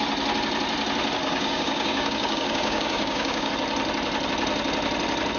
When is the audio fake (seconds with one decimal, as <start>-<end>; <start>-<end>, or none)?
1.2-3.5